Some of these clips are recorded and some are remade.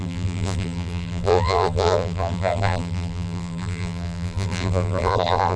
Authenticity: remade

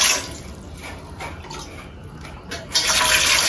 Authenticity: recorded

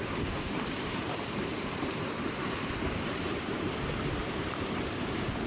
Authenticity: remade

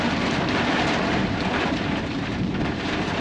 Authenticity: remade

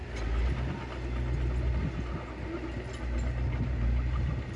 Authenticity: recorded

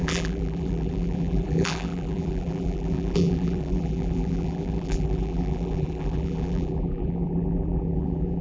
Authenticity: remade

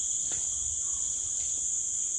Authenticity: recorded